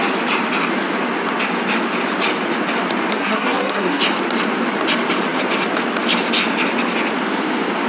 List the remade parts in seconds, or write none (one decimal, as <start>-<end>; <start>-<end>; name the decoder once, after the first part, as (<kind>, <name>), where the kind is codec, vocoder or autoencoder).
3.1-4.0 (codec, SNAC)